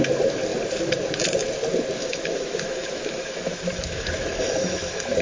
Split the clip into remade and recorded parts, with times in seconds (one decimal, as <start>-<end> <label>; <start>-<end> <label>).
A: 0.0-2.0 recorded; 2.0-5.2 remade